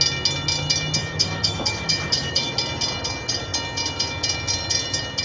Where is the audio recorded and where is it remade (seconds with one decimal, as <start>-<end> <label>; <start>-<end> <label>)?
0.0-1.0 recorded; 1.0-2.5 remade; 2.5-5.2 recorded